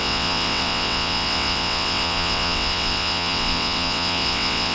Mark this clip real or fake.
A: fake